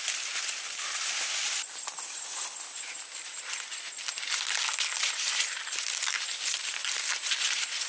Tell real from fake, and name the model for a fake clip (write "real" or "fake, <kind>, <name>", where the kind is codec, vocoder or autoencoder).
real